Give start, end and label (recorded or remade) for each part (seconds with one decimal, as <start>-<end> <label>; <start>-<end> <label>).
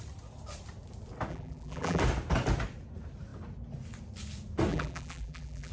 0.0-1.3 recorded; 1.3-2.0 remade; 2.0-4.7 recorded; 4.7-5.7 remade